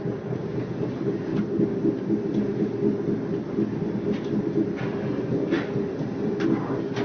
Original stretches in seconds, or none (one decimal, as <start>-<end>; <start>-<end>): 0.0-7.0